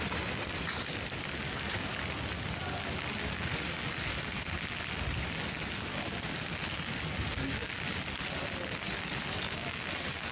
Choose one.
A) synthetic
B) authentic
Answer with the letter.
B